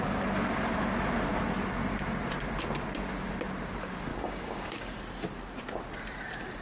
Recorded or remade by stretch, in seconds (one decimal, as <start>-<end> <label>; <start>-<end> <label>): 0.0-4.1 recorded; 4.1-4.8 remade; 4.8-6.6 recorded